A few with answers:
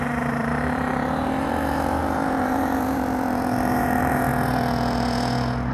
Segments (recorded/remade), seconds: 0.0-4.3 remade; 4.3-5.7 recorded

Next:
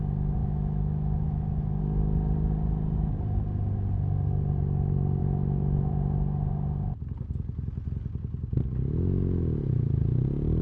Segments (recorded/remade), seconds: 0.0-0.4 recorded; 0.4-1.8 remade; 1.8-5.2 recorded; 5.2-5.9 remade; 5.9-10.6 recorded